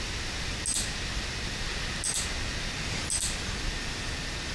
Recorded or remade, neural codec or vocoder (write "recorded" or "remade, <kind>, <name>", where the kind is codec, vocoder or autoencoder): recorded